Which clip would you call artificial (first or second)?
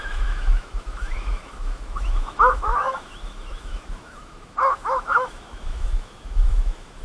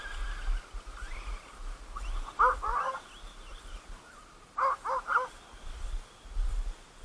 first